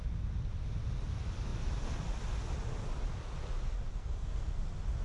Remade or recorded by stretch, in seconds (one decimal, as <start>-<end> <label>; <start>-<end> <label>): 0.0-3.9 recorded; 3.9-4.6 remade; 4.6-5.0 recorded

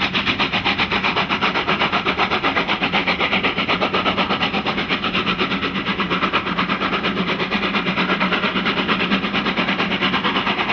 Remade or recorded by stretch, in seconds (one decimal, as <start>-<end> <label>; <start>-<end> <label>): 0.0-10.7 recorded